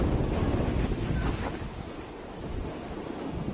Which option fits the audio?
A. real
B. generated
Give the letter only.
A